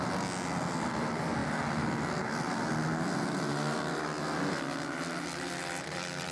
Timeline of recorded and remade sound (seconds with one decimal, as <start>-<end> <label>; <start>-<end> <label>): 0.0-6.3 recorded